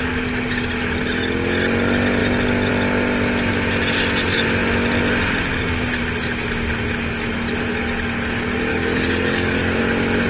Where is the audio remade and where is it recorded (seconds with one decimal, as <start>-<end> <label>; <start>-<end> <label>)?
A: 0.0-8.7 recorded; 8.7-9.8 remade; 9.8-10.3 recorded